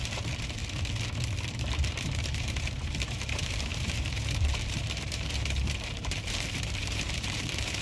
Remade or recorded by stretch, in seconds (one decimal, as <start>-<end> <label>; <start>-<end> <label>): 0.0-0.6 remade; 0.6-1.5 recorded; 1.5-7.8 remade